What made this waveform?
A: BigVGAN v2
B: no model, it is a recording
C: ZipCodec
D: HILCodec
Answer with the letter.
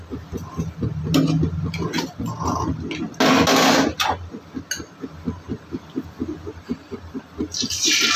B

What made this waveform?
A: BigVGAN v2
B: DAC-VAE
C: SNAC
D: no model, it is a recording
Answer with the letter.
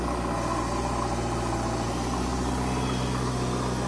D